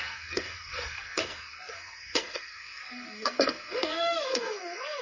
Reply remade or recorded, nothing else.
remade